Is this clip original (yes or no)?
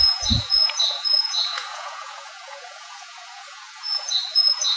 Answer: no